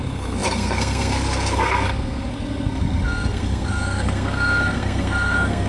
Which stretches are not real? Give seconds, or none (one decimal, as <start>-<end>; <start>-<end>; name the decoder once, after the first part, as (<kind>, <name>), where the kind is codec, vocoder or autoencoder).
0.0-5.7 (codec, SNAC)